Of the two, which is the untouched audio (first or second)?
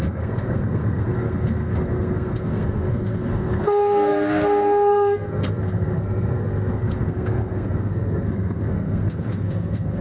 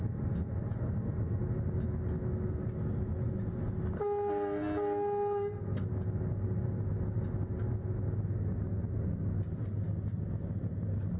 second